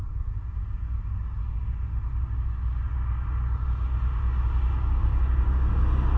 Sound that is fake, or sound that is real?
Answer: real